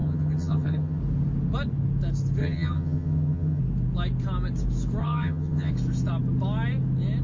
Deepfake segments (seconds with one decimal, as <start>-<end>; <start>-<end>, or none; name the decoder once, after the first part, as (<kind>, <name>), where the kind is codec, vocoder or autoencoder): 0.0-1.0 (vocoder, HiFi-GAN); 2.4-3.6; 5.0-5.7